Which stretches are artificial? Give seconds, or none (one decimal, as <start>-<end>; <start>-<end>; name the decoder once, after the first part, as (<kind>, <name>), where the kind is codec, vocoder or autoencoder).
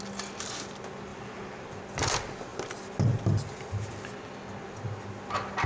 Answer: 1.1-1.8 (vocoder, BigVGAN v2)